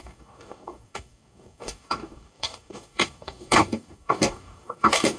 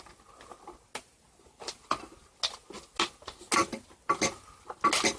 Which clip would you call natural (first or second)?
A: second